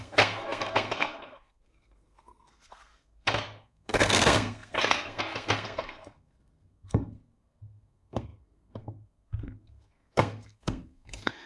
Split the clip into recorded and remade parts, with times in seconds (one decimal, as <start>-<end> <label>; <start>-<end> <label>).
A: 0.0-11.5 remade